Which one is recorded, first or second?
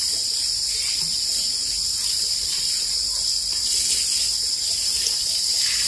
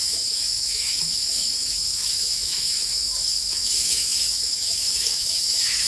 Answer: first